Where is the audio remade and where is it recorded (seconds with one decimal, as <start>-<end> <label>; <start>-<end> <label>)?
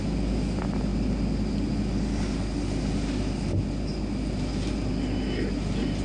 0.0-6.0 recorded